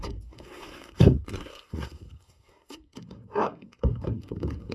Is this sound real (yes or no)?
no